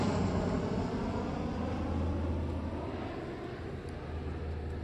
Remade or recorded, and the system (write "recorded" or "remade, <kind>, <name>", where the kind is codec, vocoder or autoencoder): recorded